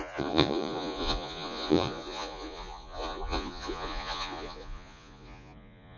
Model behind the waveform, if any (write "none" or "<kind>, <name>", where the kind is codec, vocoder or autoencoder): vocoder, Vocos